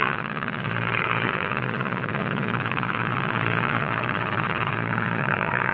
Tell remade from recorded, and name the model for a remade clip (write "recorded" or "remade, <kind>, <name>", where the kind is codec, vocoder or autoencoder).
remade, vocoder, Vocos